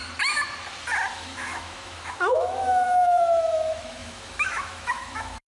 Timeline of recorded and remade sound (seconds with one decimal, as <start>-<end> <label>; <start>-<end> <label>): 0.0-1.1 recorded; 1.1-5.5 remade